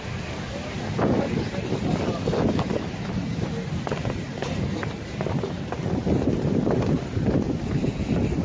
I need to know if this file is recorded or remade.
remade